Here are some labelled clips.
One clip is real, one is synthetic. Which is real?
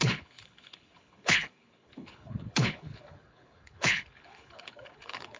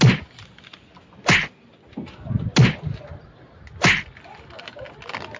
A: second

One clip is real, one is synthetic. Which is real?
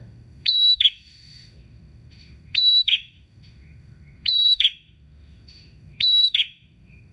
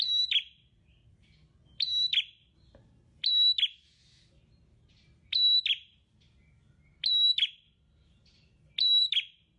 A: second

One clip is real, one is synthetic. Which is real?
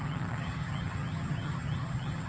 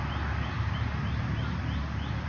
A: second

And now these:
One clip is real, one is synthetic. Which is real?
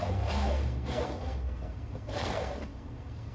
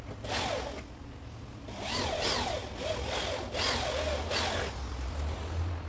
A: second